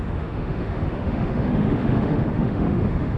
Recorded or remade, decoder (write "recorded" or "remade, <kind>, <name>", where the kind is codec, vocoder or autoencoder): remade, autoencoder, DAC-VAE